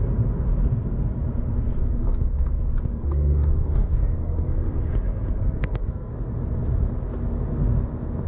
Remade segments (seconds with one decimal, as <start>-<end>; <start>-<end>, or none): 1.8-2.5; 2.9-4.7; 5.4-6.1